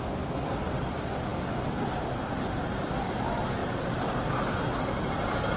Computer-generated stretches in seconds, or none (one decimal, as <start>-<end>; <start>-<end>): none